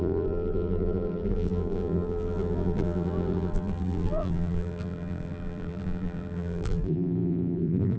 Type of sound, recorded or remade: remade